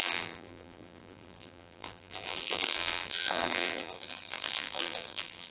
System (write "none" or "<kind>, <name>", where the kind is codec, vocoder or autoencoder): vocoder, BigVGAN v2